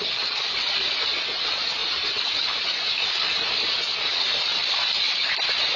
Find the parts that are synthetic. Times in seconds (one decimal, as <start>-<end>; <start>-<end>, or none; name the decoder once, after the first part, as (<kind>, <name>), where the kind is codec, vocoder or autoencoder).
none